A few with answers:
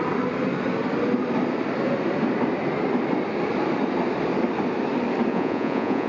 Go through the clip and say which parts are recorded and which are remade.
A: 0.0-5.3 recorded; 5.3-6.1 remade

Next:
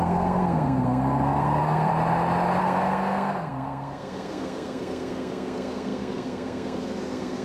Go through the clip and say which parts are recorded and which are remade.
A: 0.0-1.9 remade; 1.9-2.6 recorded; 2.6-7.4 remade

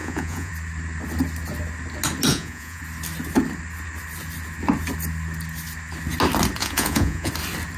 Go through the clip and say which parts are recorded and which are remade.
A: 0.0-0.5 remade; 0.5-2.3 recorded; 2.3-2.8 remade; 2.8-6.6 recorded; 6.6-7.3 remade; 7.3-7.8 recorded

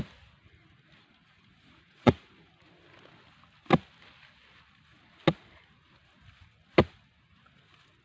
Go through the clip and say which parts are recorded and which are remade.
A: 0.0-1.1 recorded; 1.1-2.5 remade; 2.5-8.0 recorded